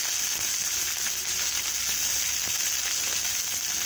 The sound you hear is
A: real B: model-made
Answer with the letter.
A